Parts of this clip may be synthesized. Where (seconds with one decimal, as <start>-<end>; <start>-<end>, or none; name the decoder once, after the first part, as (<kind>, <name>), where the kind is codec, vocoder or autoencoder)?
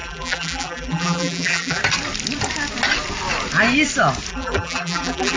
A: 0.0-1.8 (vocoder, BigVGAN v2); 4.3-5.4